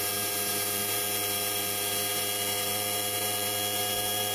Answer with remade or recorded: remade